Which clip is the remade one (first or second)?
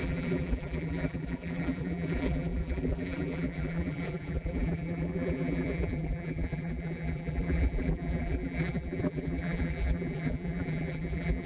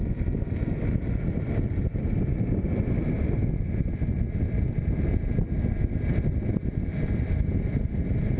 first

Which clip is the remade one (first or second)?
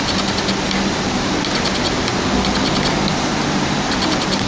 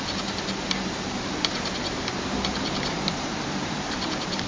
second